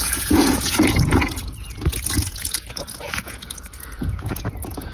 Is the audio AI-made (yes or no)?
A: yes